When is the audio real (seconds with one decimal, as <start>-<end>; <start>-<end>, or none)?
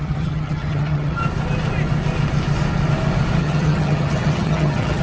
1.2-3.4